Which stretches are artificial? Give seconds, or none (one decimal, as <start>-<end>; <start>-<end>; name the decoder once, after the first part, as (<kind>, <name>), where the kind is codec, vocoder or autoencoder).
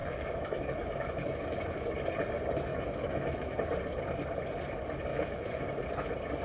0.0-1.7 (autoencoder, DAC-VAE); 2.7-3.6; 5.1-5.7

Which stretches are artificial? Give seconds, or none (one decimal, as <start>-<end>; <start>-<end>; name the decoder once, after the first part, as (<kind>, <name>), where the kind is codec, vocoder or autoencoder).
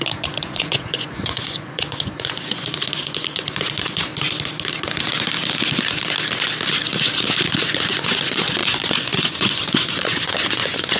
0.0-4.1 (vocoder, Vocos); 7.9-11.0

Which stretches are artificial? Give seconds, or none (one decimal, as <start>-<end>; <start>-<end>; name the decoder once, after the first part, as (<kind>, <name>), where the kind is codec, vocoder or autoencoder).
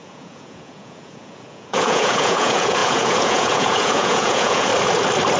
0.0-4.7 (vocoder, Vocos)